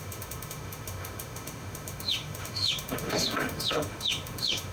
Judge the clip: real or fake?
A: fake